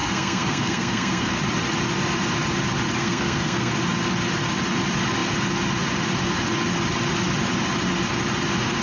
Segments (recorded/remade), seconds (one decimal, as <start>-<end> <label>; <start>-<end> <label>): 0.0-1.4 remade; 1.4-3.0 recorded; 3.0-3.7 remade; 3.7-8.8 recorded

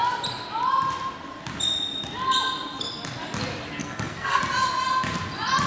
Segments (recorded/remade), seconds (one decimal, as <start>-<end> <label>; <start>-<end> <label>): 0.0-3.8 recorded; 3.8-4.4 remade; 4.4-5.7 recorded

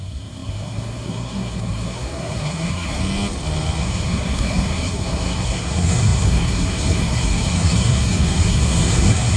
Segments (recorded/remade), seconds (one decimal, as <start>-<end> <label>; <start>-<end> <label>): 0.0-3.0 remade; 3.0-3.8 recorded; 3.8-9.4 remade

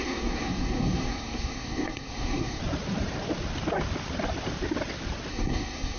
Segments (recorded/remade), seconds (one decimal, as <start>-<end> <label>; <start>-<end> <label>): 0.0-2.6 remade; 2.6-5.3 recorded; 5.3-6.0 remade

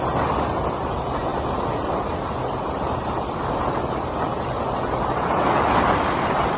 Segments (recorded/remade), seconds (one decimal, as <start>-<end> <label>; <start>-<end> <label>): 0.0-6.6 recorded

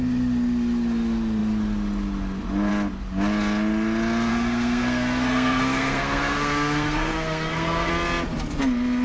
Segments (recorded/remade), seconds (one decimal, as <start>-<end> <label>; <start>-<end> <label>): 0.0-4.3 recorded; 4.3-7.9 remade; 7.9-9.0 recorded